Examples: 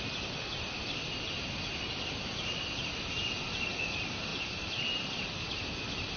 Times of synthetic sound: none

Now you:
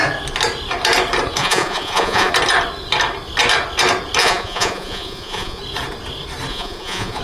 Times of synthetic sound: 1.4-2.3 (vocoder, Vocos); 4.2-5.6; 6.5-7.2

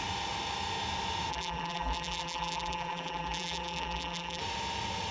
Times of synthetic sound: 1.3-4.4 (vocoder, BigVGAN v2)

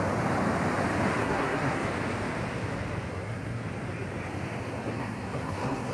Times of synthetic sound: 1.2-1.9 (codec, SNAC); 3.1-3.6; 4.8-5.9